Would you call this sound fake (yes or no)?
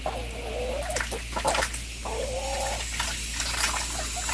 no